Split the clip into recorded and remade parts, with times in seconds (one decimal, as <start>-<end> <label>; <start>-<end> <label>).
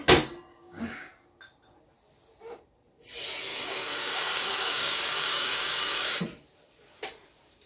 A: 0.0-0.5 recorded; 0.5-1.1 remade; 1.1-3.5 recorded; 3.5-6.2 remade; 6.2-7.7 recorded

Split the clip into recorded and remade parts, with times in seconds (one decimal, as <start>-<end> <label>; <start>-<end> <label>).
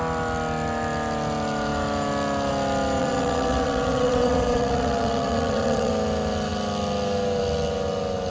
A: 0.0-3.0 recorded; 3.0-5.9 remade; 5.9-8.3 recorded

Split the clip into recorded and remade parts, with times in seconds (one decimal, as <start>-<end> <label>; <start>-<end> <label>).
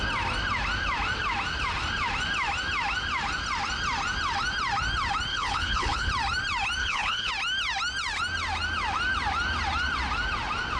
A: 0.0-5.3 recorded; 5.3-6.1 remade; 6.1-6.8 recorded; 6.8-7.3 remade; 7.3-10.8 recorded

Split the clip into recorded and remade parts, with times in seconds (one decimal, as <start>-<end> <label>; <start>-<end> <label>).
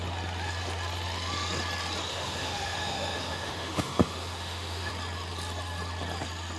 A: 0.0-2.1 recorded; 2.1-4.9 remade; 4.9-6.6 recorded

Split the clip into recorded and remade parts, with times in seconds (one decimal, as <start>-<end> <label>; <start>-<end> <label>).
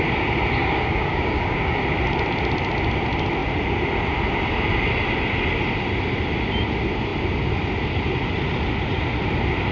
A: 0.0-0.6 recorded; 0.6-1.8 remade; 1.8-9.7 recorded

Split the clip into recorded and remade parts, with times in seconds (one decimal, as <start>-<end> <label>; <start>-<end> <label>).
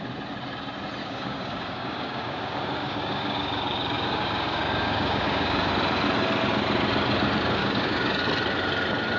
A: 0.0-1.0 recorded; 1.0-5.7 remade; 5.7-7.6 recorded; 7.6-8.2 remade; 8.2-9.2 recorded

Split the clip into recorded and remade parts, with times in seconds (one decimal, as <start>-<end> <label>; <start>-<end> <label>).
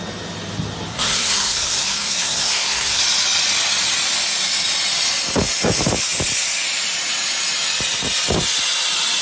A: 0.0-0.9 recorded; 0.9-3.0 remade; 3.0-9.2 recorded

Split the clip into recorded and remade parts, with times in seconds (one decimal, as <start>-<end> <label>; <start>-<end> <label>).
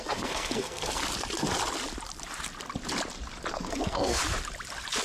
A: 0.0-1.0 remade; 1.0-3.5 recorded; 3.5-4.2 remade; 4.2-5.0 recorded